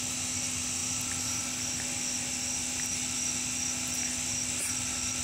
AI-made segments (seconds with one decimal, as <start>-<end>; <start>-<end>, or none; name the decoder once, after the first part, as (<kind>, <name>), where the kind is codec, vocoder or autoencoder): none